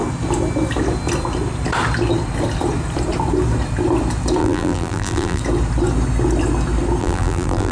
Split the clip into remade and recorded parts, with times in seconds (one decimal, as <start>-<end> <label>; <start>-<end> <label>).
0.0-4.4 recorded; 4.4-5.4 remade; 5.4-7.0 recorded; 7.0-7.7 remade